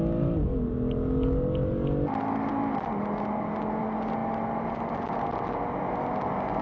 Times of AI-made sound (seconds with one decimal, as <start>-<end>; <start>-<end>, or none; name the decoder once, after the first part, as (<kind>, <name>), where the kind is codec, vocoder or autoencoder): none